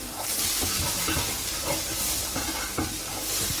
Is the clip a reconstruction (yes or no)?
no